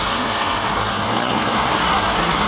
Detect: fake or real fake